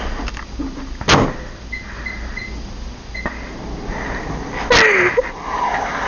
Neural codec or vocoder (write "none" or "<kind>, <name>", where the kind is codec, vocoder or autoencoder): none